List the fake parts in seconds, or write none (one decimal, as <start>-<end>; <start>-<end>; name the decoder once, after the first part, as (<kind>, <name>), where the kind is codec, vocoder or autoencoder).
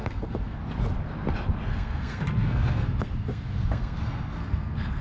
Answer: 0.0-0.6 (codec, SNAC); 1.7-5.0